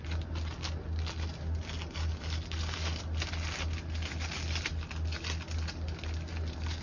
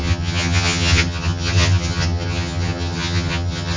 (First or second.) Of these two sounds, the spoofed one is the second